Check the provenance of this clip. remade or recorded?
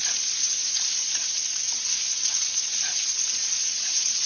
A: remade